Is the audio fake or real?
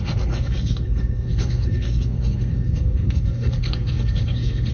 fake